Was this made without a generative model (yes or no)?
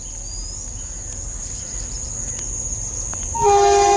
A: yes